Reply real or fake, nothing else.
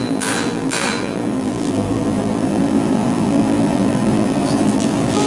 fake